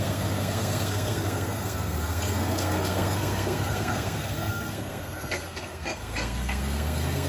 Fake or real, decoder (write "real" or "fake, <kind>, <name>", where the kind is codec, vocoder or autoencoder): fake, codec, SNAC